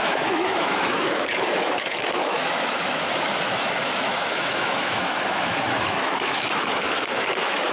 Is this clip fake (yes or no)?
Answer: yes